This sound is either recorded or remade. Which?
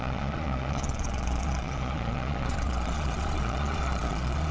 remade